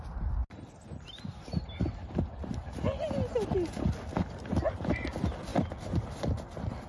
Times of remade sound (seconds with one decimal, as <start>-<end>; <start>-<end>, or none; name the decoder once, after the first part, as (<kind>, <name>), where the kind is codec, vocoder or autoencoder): none